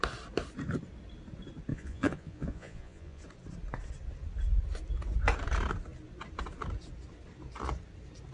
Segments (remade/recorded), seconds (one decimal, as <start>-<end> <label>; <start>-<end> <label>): 0.0-1.7 recorded; 1.7-3.2 remade; 3.2-8.3 recorded